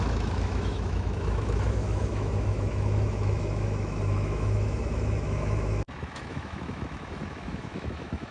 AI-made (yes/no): yes